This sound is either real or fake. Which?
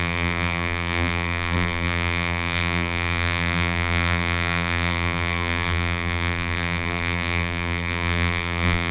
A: fake